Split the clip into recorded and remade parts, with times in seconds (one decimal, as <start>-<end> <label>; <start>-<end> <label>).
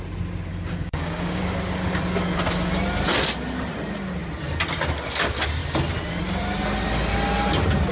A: 0.0-0.5 recorded; 0.5-1.4 remade; 1.4-7.9 recorded